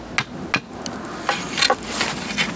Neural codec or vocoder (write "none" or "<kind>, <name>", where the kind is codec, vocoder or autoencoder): none